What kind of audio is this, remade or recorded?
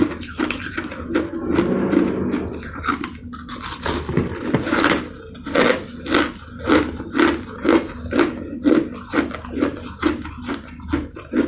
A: recorded